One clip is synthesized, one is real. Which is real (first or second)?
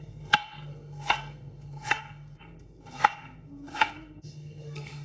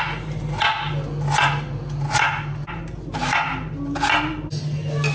second